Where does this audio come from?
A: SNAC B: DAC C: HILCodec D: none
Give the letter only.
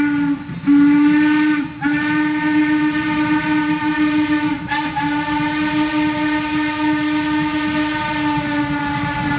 D